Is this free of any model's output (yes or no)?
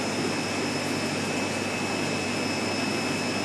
yes